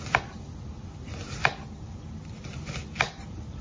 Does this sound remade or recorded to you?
recorded